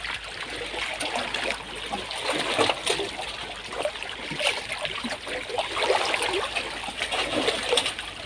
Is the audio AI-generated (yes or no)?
no